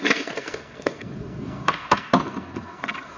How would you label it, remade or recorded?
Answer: remade